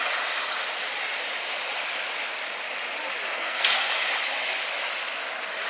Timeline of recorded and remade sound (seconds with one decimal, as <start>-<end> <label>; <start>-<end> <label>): 0.0-3.3 recorded; 3.3-3.9 remade; 3.9-5.7 recorded